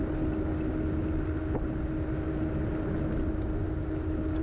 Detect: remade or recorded recorded